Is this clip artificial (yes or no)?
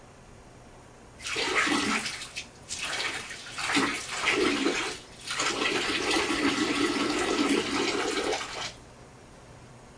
yes